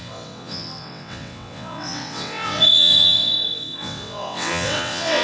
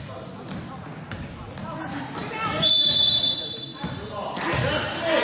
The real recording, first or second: second